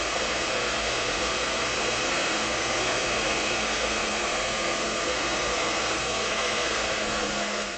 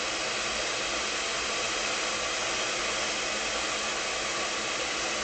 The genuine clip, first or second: second